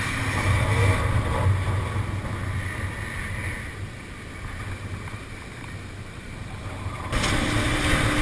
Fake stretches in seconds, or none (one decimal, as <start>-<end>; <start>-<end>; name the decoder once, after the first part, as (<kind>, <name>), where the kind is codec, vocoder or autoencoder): none